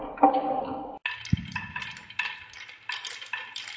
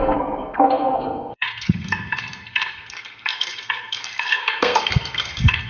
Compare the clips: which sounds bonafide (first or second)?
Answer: first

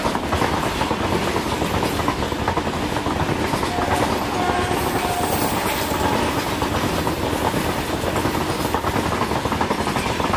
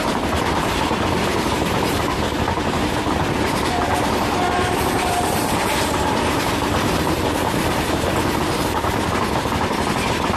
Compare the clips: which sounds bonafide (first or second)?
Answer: first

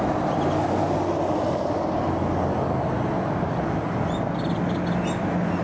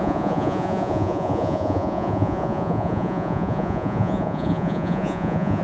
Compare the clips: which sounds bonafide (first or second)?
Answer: first